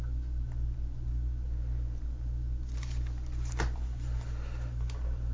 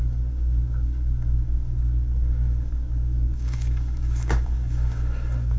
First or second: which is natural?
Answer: first